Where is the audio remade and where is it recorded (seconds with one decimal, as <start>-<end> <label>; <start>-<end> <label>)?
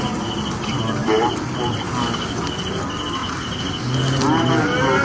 0.0-5.0 recorded